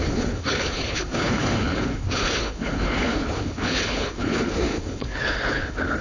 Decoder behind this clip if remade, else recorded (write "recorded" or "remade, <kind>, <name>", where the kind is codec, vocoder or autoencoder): remade, codec, HILCodec